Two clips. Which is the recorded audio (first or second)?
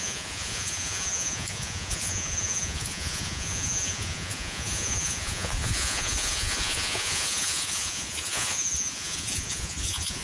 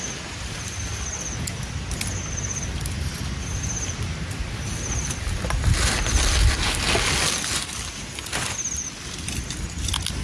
second